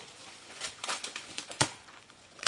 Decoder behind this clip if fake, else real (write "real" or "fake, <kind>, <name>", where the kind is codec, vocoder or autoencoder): fake, vocoder, Vocos